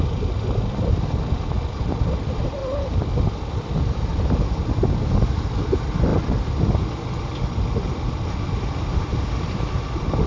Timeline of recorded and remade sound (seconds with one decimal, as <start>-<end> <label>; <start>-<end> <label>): 0.0-10.3 recorded

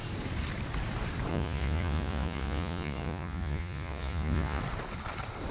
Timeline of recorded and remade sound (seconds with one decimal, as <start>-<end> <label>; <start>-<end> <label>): 0.0-1.3 recorded; 1.3-4.6 remade; 4.6-5.5 recorded